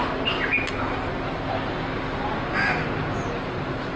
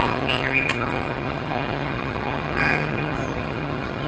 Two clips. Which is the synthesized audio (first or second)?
second